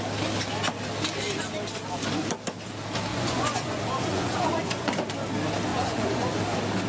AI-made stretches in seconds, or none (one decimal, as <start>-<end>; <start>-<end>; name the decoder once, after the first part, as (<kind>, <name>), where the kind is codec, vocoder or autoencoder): 3.1-4.9 (vocoder, Vocos); 5.7-6.3